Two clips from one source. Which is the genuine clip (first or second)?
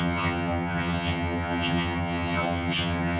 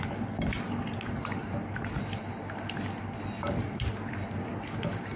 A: second